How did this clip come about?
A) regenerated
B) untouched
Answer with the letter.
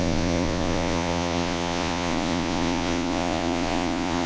A